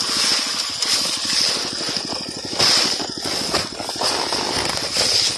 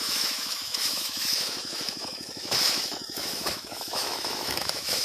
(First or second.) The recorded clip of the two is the first